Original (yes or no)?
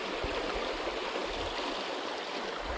yes